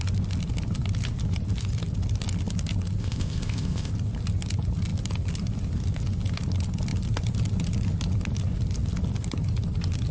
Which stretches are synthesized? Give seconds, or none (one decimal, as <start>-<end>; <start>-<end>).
3.0-3.9